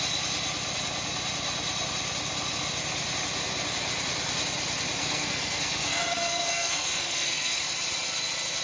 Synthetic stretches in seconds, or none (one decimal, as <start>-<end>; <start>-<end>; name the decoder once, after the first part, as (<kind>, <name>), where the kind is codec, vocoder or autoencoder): 5.0-7.6 (codec, SNAC)